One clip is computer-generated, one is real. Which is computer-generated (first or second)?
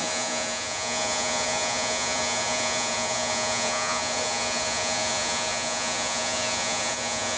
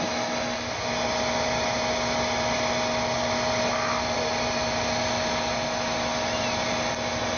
first